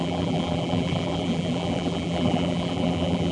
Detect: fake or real fake